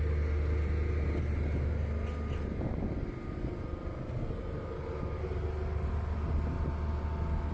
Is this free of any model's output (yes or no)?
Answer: yes